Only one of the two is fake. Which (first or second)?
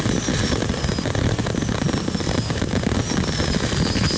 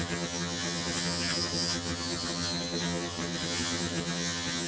second